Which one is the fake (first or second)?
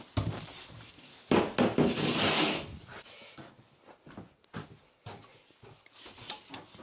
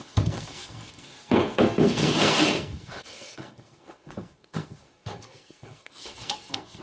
second